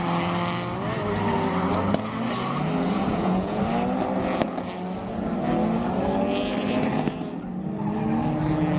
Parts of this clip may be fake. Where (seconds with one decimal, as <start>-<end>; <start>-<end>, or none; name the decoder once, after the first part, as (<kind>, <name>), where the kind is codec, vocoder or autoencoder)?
3.1-3.6 (vocoder, Vocos)